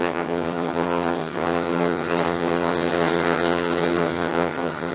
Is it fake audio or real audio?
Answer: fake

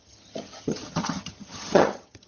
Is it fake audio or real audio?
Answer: fake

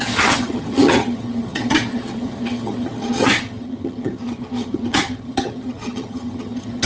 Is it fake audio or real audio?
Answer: fake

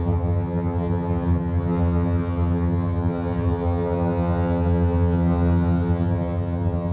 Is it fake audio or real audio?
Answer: fake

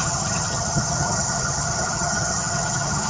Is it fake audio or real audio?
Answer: fake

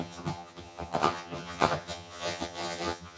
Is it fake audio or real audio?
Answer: fake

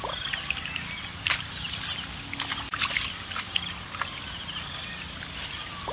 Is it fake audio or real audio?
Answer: real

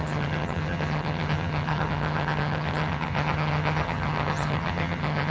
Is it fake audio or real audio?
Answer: fake